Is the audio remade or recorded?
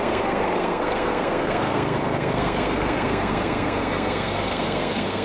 remade